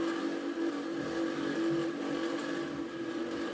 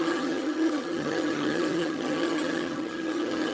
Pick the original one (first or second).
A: first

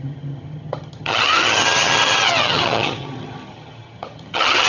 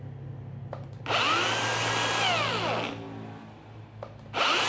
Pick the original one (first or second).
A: second